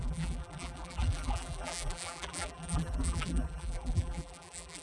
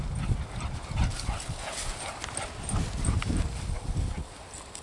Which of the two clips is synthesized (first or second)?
first